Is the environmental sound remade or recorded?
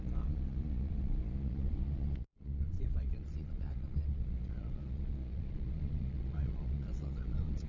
remade